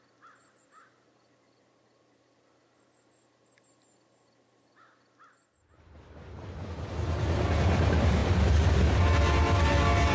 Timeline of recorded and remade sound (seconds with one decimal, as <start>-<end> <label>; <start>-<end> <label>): 0.0-10.1 recorded